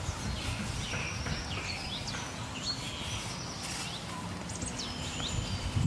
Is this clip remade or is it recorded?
recorded